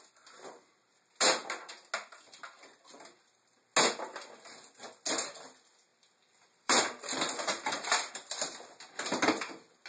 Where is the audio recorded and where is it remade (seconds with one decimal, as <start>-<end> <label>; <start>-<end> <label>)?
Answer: 0.0-5.9 recorded; 5.9-8.1 remade; 8.1-9.9 recorded